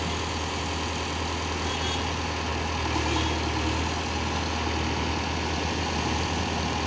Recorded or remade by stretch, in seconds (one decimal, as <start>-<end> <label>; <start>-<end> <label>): 0.0-6.9 recorded